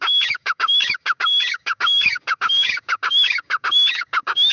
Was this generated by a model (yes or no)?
yes